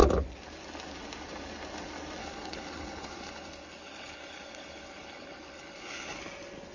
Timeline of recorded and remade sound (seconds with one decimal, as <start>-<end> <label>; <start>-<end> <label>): 0.0-2.2 recorded; 2.2-6.2 remade; 6.2-6.7 recorded